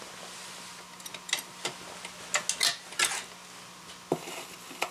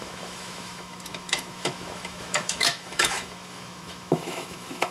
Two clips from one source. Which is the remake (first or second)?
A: second